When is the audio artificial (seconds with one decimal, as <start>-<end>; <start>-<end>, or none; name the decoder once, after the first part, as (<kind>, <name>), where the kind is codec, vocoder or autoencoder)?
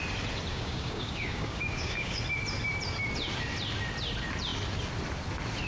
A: 0.5-2.2 (codec, DAC)